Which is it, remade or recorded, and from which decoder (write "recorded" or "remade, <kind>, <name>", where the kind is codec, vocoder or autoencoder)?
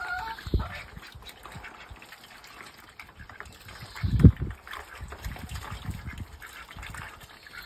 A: recorded